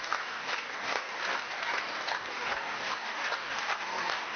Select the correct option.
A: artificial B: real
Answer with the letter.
A